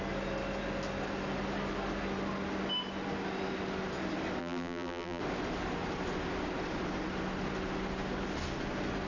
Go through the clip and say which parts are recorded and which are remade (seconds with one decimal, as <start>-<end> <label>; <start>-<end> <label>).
0.0-4.4 recorded; 4.4-5.2 remade; 5.2-9.1 recorded